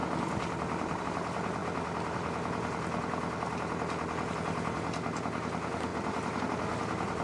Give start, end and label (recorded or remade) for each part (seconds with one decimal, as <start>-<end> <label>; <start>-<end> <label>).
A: 0.0-7.2 recorded